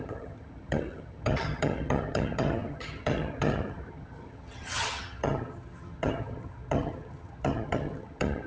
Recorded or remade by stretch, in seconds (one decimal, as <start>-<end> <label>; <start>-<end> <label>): 0.0-8.5 remade